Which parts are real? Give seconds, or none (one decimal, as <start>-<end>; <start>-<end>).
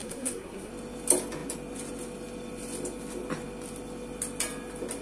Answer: 0.7-5.0